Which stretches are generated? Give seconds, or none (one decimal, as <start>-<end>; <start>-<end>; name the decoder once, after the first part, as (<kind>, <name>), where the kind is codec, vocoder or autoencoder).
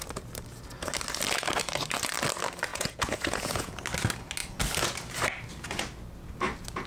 2.7-3.7 (vocoder, Vocos)